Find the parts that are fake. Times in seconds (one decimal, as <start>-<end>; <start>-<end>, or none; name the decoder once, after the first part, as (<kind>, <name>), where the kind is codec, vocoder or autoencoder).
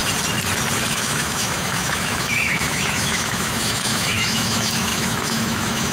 0.9-5.9 (autoencoder, DAC-VAE)